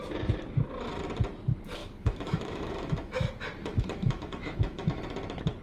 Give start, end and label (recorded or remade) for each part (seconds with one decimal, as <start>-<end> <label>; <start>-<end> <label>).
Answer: 0.0-1.8 recorded; 1.8-3.3 remade; 3.3-3.7 recorded; 3.7-5.0 remade; 5.0-5.6 recorded